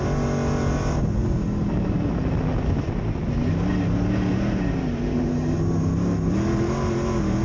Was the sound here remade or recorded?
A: recorded